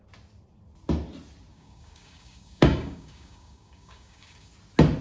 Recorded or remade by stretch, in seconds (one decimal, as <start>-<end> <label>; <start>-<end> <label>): 0.0-1.5 recorded; 1.5-4.5 remade; 4.5-5.0 recorded